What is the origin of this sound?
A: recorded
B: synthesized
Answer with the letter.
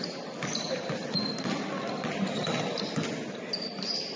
A